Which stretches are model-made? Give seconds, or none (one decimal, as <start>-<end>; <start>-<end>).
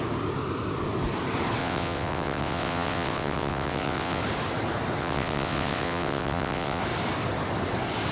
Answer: 1.6-4.2; 5.0-6.8